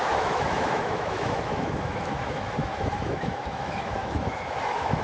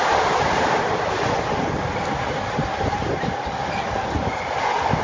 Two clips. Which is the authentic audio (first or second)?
second